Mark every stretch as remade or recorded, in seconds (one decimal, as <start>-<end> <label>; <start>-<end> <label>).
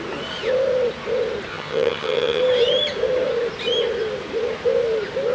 0.0-1.5 recorded; 1.5-2.4 remade; 2.4-5.3 recorded